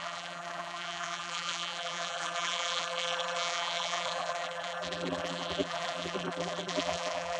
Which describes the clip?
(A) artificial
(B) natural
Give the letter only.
A